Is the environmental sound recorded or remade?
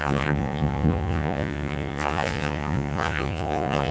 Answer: remade